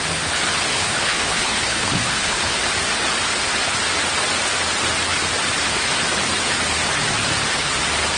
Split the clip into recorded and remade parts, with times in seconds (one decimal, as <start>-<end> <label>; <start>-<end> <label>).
0.0-0.7 recorded; 0.7-2.6 remade; 2.6-8.2 recorded